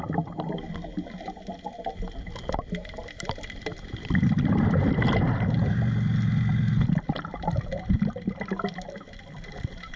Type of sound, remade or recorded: recorded